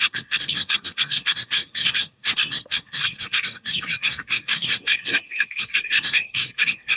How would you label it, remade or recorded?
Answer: remade